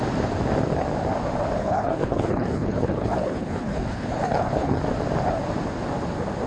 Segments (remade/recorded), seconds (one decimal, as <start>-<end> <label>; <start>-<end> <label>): 0.0-1.6 recorded; 1.6-4.8 remade; 4.8-6.5 recorded